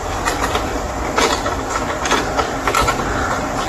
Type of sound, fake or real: real